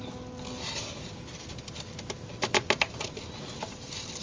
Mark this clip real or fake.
real